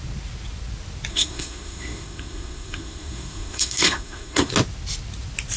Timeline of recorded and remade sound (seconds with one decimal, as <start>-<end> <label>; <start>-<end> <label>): 0.0-1.1 recorded; 1.1-4.5 remade; 4.5-5.6 recorded